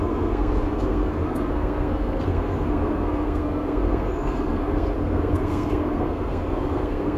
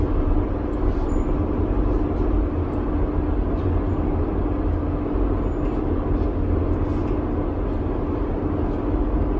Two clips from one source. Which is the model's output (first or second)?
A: first